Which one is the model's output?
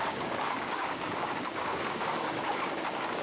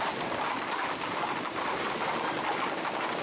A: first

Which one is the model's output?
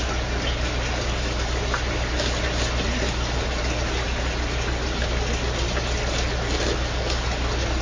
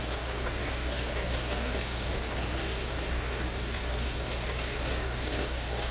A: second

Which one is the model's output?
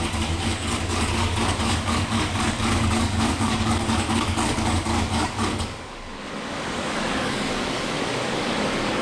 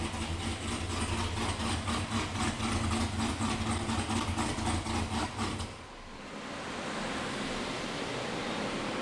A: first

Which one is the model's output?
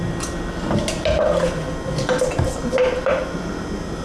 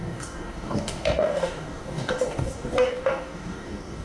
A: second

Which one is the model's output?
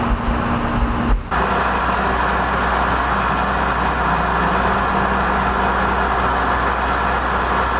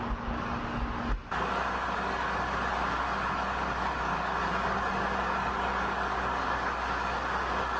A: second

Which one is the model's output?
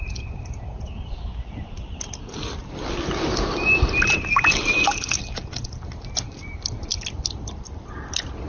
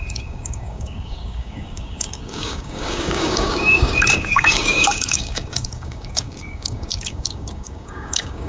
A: second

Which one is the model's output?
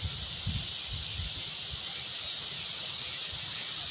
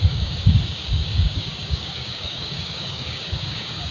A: second